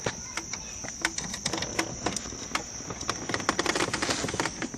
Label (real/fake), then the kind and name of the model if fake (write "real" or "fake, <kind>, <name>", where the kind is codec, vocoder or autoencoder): real